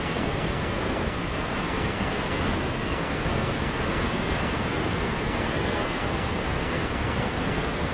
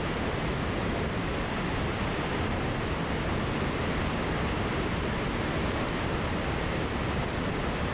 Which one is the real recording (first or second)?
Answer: second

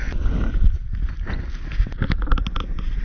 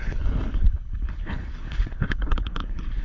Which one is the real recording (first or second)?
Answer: first